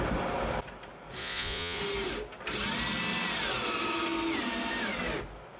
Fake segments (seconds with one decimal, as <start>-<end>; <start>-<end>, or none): 1.2-1.8